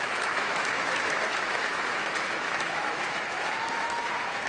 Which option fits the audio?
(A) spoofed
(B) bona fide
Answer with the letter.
A